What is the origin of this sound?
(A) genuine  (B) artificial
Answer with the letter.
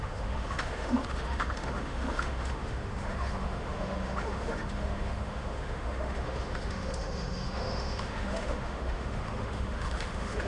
B